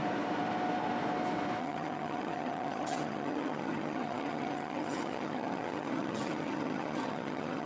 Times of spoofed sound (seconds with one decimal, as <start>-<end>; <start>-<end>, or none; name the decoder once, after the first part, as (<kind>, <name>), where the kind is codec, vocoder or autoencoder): 1.6-7.7 (vocoder, HiFi-GAN)

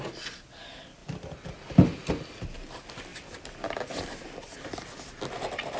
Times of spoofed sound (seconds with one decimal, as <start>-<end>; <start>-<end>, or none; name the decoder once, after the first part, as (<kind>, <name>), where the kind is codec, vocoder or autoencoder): none